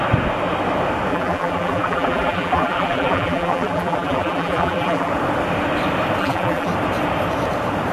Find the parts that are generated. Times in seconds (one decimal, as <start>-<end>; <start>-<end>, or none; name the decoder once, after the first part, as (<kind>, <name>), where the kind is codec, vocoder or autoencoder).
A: 1.1-5.1 (vocoder, BigVGAN v2); 6.2-6.7